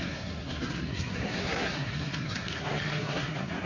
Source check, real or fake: fake